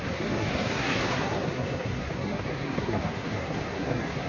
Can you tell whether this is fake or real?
fake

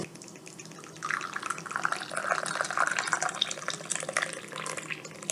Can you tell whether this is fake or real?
real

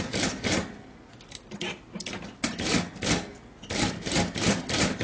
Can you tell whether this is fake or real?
real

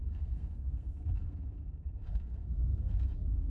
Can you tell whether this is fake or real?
fake